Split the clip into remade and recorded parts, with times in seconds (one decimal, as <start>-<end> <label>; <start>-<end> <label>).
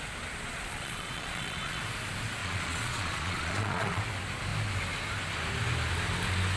0.0-0.5 recorded; 0.5-1.8 remade; 1.8-2.4 recorded; 2.4-4.0 remade; 4.0-6.6 recorded